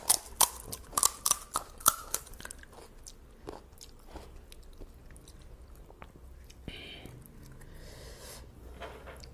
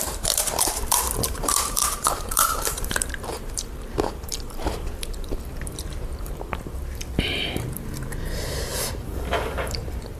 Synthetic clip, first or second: second